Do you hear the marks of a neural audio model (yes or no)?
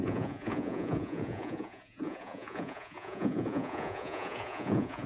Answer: yes